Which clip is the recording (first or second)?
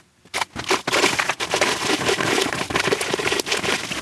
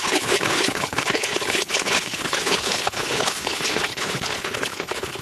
first